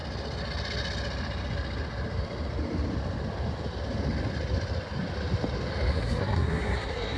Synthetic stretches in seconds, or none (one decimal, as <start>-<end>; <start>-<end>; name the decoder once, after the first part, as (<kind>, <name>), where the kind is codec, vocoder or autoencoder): 5.9-7.2 (codec, SNAC)